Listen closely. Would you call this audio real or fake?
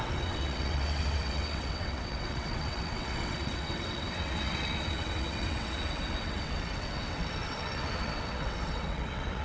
fake